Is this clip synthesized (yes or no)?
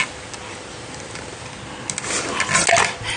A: no